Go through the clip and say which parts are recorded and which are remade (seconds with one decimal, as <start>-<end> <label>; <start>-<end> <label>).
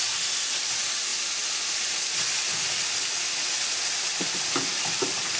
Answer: 0.0-5.4 recorded